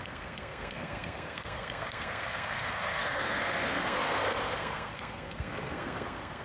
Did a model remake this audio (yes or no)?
yes